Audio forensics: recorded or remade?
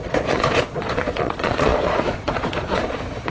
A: remade